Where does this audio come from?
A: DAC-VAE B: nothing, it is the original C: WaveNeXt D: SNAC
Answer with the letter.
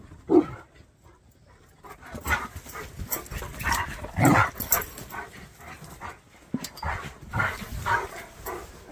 B